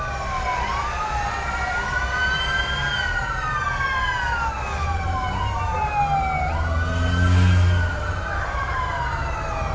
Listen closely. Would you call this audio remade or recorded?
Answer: recorded